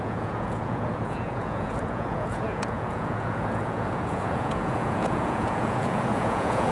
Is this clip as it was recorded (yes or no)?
no